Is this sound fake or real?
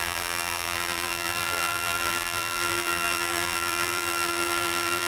fake